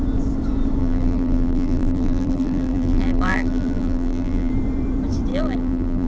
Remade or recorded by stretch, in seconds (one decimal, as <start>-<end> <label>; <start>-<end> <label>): 0.0-0.8 recorded; 0.8-4.5 remade; 4.5-5.3 recorded; 5.3-6.1 remade